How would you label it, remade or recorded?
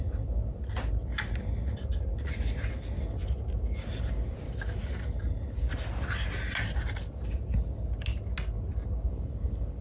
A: recorded